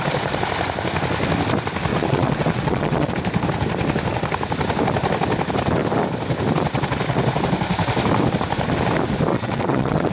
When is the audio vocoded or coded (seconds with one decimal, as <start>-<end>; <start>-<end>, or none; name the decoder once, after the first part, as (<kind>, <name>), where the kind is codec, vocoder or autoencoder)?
1.9-3.1 (vocoder, WaveNeXt); 9.3-10.1